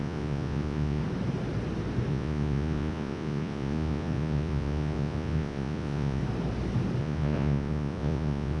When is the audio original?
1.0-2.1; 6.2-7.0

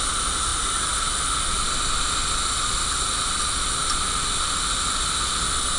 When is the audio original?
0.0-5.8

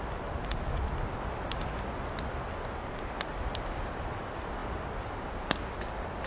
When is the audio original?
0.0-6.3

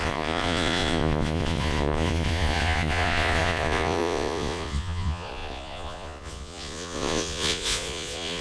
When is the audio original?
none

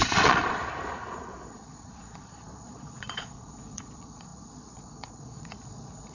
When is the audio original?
0.6-1.5

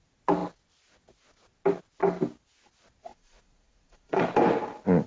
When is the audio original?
0.0-3.1; 4.2-5.1

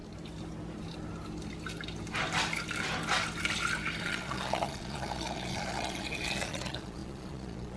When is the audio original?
0.0-4.0

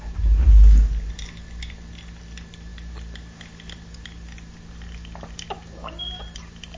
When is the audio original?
0.0-6.8